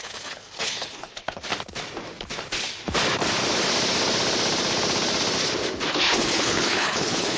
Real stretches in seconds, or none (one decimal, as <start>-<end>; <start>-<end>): 1.5-5.9